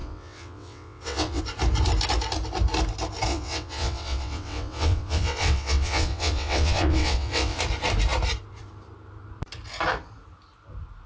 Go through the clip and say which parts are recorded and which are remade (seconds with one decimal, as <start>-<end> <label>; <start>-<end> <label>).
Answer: 0.0-1.4 remade; 1.4-3.3 recorded; 3.3-7.6 remade; 7.6-11.1 recorded